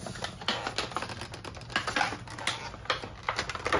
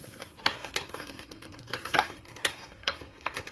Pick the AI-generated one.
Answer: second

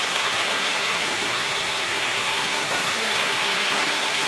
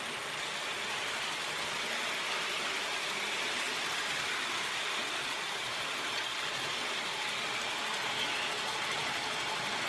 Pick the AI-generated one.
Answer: first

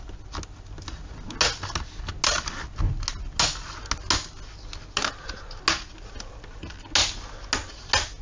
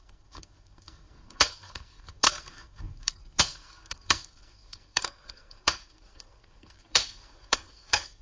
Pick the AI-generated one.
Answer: second